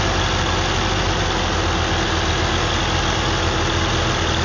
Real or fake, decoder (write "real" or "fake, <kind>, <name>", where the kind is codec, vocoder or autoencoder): real